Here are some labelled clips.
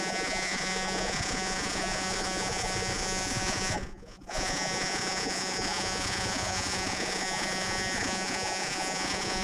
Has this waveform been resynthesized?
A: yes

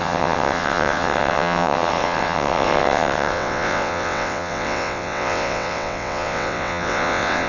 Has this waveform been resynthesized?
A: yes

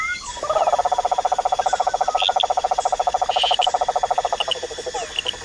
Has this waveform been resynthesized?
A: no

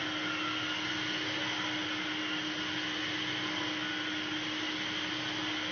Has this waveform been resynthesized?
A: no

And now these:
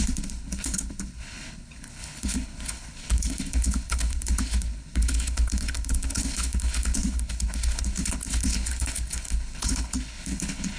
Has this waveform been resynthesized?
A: yes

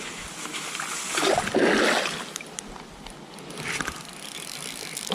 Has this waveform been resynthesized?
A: no